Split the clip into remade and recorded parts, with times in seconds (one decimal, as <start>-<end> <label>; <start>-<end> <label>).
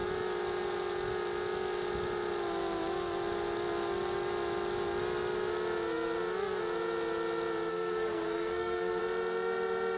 0.0-7.7 recorded; 7.7-9.0 remade; 9.0-10.0 recorded